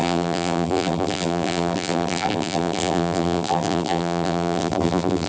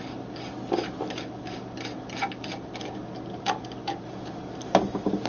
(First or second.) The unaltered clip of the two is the second